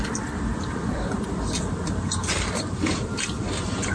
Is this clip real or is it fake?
fake